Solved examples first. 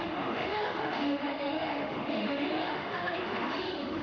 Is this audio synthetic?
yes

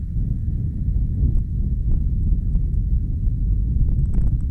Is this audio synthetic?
no